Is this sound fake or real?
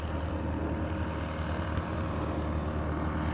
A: real